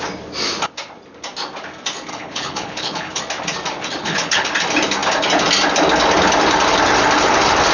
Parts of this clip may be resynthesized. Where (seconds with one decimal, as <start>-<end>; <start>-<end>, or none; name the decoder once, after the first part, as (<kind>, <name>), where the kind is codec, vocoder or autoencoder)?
2.1-3.2 (codec, HILCodec); 4.0-4.5